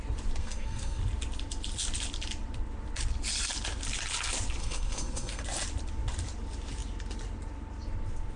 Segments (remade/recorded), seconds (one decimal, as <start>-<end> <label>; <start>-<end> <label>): 0.0-0.4 recorded; 0.4-1.0 remade; 1.0-4.6 recorded; 4.6-5.4 remade; 5.4-8.4 recorded